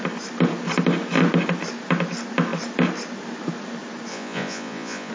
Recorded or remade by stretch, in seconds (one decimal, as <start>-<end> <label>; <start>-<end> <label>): 0.0-4.1 recorded; 4.1-5.1 remade